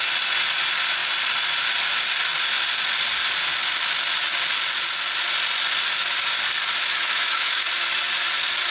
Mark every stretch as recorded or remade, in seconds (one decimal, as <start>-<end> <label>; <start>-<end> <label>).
0.0-6.9 recorded; 6.9-7.7 remade; 7.7-8.7 recorded